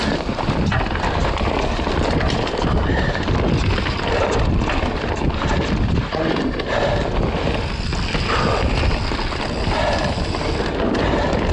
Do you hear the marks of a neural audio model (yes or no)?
no